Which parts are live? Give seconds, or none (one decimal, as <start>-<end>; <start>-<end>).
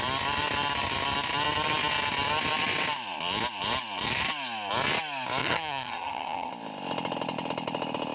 0.0-5.4; 6.5-8.1